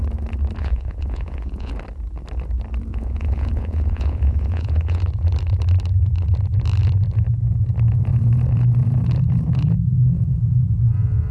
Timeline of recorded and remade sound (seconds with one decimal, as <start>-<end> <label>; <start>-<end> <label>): 0.0-0.6 recorded; 0.6-1.7 remade; 1.7-2.9 recorded; 2.9-5.0 remade; 5.0-11.3 recorded